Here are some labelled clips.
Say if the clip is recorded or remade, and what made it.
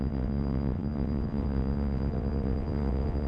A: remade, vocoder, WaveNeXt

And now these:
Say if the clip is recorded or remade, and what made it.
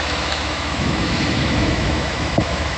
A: remade, autoencoder, DAC-VAE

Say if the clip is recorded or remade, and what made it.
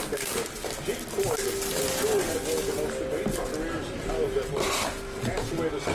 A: recorded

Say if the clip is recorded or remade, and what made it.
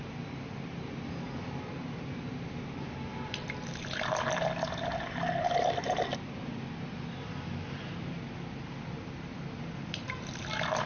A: recorded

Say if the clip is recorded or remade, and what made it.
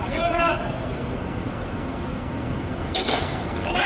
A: remade, codec, SNAC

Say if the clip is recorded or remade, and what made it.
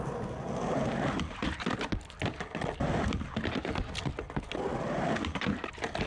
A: recorded